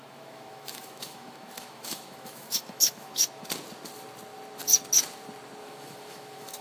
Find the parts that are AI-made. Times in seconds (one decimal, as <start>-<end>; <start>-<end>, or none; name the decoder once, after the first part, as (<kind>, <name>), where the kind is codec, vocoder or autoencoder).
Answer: 0.0-3.4 (autoencoder, DAC-VAE); 5.6-6.6